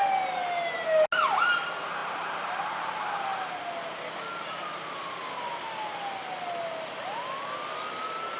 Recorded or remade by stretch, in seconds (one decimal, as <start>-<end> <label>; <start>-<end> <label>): 0.0-8.4 recorded